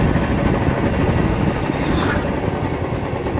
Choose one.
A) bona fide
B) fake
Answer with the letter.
A